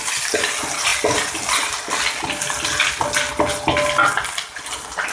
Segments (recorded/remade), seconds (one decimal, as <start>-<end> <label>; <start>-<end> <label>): 0.0-5.1 recorded